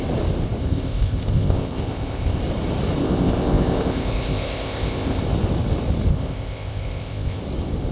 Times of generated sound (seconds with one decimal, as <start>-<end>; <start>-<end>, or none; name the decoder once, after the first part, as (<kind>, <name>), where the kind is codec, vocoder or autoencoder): 0.6-2.4 (codec, ZipCodec); 3.0-5.2; 6.1-7.4